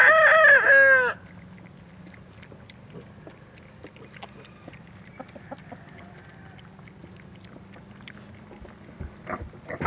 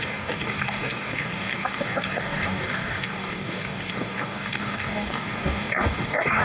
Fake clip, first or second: second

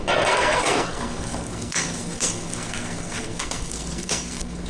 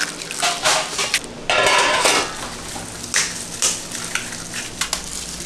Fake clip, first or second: first